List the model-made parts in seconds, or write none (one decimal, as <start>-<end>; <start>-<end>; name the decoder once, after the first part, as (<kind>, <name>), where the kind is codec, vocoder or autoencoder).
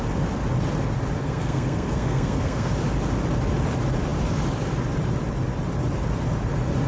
1.2-2.7 (codec, SNAC)